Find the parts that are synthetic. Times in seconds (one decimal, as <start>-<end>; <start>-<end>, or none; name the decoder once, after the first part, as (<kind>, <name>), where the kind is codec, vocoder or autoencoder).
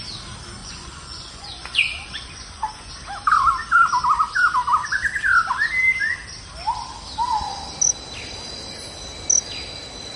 0.6-2.9 (vocoder, Vocos)